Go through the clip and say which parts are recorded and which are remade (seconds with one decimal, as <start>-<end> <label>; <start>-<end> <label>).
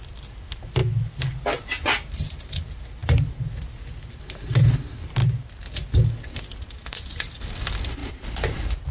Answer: 0.0-8.9 recorded